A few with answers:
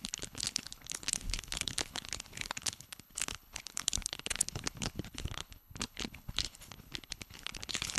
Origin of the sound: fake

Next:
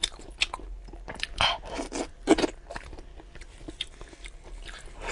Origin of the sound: real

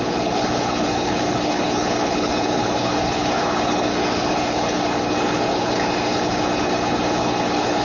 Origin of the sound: fake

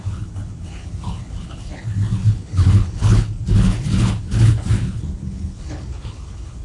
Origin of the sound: fake